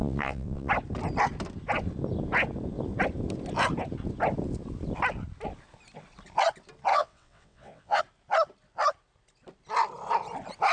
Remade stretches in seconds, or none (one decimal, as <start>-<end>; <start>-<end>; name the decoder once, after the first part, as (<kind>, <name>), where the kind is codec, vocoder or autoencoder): 0.0-0.7 (vocoder, WaveNeXt); 6.9-8.0